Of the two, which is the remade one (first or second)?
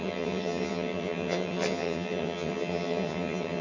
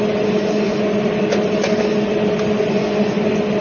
first